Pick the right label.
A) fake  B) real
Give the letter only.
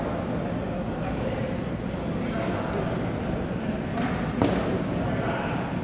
B